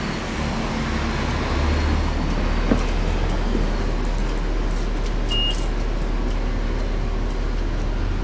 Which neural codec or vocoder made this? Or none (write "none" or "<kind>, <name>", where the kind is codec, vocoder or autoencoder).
none